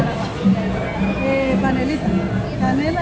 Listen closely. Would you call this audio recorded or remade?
recorded